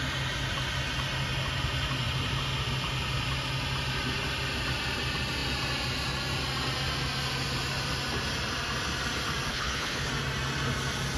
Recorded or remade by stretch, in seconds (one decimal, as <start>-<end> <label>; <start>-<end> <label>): 0.0-9.5 recorded; 9.5-10.1 remade; 10.1-11.2 recorded